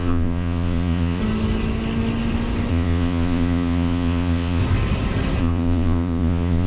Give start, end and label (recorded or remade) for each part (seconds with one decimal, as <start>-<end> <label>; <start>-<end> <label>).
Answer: 0.0-1.2 remade; 1.2-2.7 recorded; 2.7-4.6 remade; 4.6-5.4 recorded; 5.4-6.7 remade